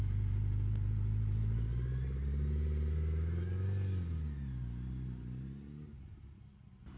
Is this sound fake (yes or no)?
no